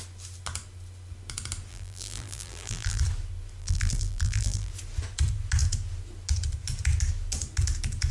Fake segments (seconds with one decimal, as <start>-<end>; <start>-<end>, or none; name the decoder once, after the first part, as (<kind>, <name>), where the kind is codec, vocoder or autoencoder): 1.7-3.0 (vocoder, BigVGAN v2); 3.6-4.7